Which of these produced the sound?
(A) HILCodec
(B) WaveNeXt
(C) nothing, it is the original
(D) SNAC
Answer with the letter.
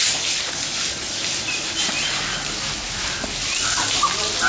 C